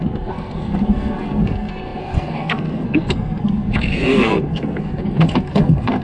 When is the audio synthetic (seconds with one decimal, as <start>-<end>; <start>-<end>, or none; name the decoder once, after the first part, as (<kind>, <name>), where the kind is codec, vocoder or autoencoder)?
0.0-6.0 (codec, SNAC)